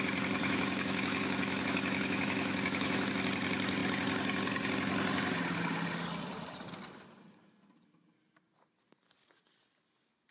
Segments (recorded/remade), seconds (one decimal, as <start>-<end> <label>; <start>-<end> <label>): 0.0-0.4 recorded; 0.4-3.1 remade; 3.1-10.3 recorded

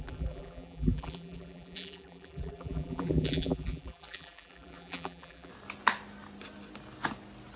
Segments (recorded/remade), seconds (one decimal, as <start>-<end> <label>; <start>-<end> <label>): 0.0-5.5 remade; 5.5-7.6 recorded

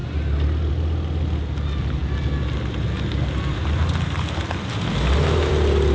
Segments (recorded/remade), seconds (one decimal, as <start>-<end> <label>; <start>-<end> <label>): 0.0-5.9 recorded

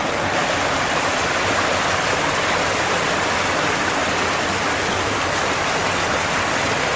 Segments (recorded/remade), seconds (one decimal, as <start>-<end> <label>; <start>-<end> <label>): 0.0-7.0 recorded

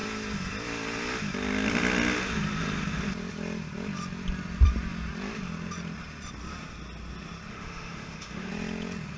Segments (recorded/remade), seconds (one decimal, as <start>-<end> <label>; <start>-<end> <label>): 0.0-7.5 recorded; 7.5-8.5 remade; 8.5-9.2 recorded